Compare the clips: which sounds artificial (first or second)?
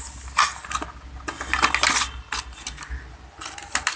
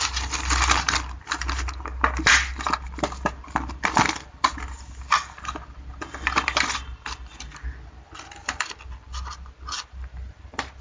second